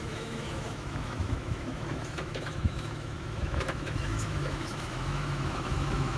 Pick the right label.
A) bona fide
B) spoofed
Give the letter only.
B